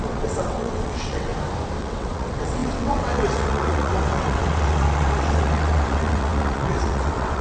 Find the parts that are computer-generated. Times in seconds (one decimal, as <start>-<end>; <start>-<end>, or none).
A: 0.0-1.3; 1.8-7.4